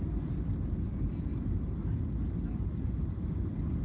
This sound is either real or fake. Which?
real